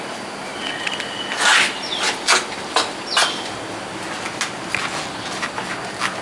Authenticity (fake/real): real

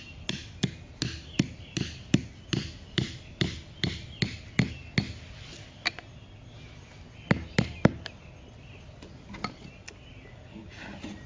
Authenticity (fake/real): real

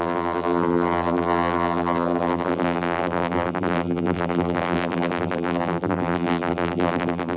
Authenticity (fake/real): fake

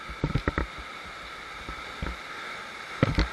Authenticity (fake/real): fake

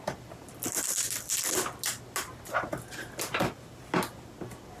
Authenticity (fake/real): real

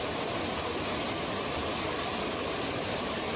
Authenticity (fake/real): real